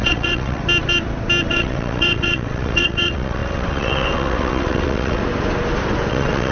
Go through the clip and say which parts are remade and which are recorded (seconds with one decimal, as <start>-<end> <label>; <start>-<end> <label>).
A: 0.0-0.6 remade; 0.6-1.5 recorded; 1.5-5.2 remade; 5.2-6.1 recorded; 6.1-6.5 remade